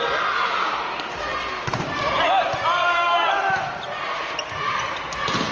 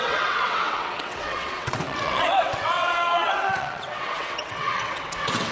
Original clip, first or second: first